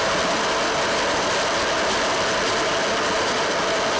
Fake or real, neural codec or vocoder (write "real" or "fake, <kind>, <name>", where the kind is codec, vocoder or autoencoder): real